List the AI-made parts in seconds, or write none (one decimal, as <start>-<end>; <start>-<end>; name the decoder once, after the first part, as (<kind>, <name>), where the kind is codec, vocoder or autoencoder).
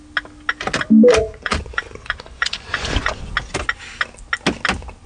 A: 1.2-3.3 (vocoder, Vocos)